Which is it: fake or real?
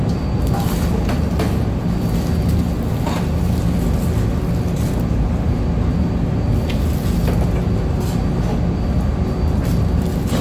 real